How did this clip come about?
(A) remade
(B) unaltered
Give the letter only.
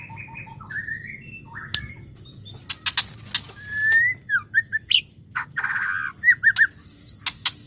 B